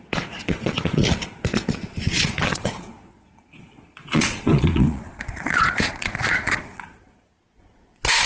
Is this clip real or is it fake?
fake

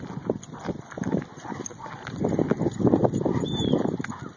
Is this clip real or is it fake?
real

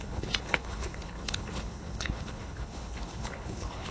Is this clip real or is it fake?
fake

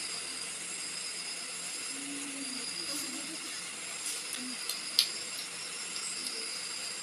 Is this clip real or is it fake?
real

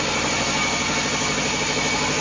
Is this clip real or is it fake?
real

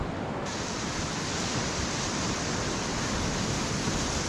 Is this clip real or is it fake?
real